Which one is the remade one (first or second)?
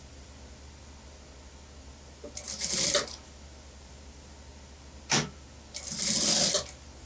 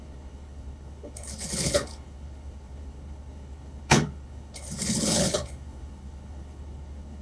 second